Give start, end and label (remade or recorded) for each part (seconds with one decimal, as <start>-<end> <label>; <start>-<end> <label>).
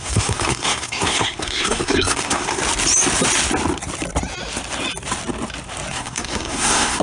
0.0-2.6 remade; 2.6-5.9 recorded; 5.9-7.0 remade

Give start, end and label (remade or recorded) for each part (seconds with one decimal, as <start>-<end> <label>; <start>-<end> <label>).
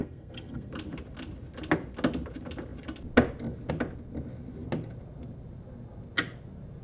0.0-0.7 remade; 0.7-6.8 recorded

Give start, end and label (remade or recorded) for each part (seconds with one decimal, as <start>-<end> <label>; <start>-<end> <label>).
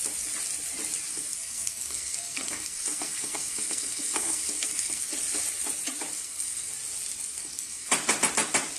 0.0-1.1 recorded; 1.1-5.1 remade; 5.1-6.1 recorded; 6.1-6.7 remade; 6.7-7.2 recorded; 7.2-7.9 remade; 7.9-8.8 recorded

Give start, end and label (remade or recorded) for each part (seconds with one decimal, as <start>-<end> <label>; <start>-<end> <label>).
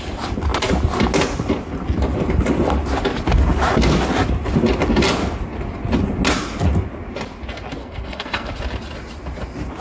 0.0-7.8 recorded; 7.8-8.5 remade; 8.5-9.8 recorded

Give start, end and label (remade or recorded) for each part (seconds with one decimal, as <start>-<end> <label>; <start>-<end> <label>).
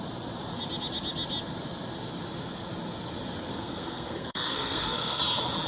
0.0-3.5 recorded; 3.5-5.2 remade; 5.2-5.7 recorded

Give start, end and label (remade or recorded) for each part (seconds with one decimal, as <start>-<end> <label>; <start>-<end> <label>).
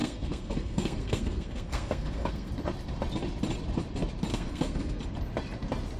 0.0-2.5 remade; 2.5-4.3 recorded; 4.3-5.0 remade; 5.0-6.0 recorded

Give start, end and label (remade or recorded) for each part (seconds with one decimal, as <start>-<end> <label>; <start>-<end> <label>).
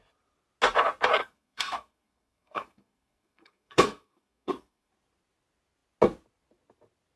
0.0-1.2 recorded; 1.2-4.9 remade; 4.9-7.2 recorded